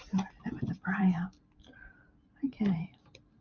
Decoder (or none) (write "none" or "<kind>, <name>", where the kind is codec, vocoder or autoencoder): vocoder, BigVGAN v2